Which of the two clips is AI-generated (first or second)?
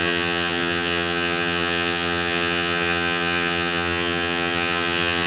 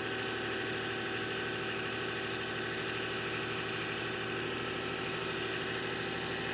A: first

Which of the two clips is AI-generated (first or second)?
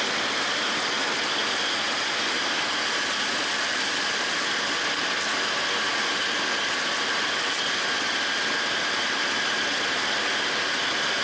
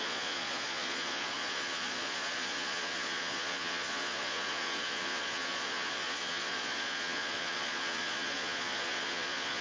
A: second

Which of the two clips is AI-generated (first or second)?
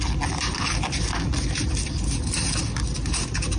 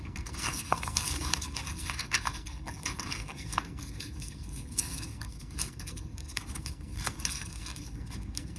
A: second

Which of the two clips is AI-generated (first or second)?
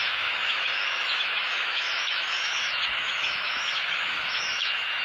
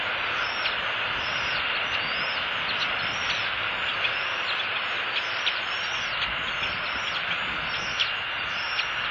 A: first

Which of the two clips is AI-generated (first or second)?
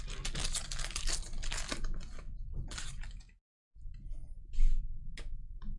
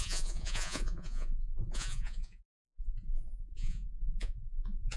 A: second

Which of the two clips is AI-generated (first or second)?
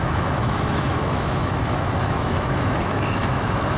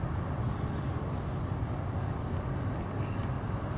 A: first